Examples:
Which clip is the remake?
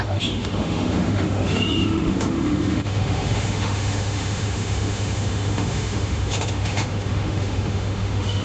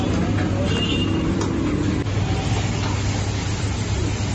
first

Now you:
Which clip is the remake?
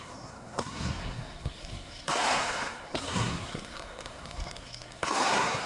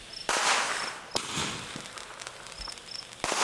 first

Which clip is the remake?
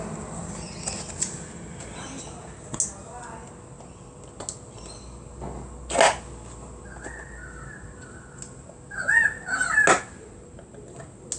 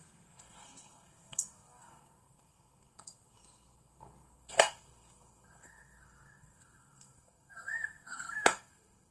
second